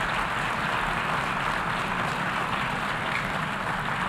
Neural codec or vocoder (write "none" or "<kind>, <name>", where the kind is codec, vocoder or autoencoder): none